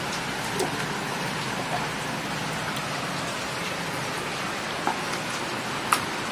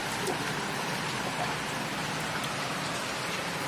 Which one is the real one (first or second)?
first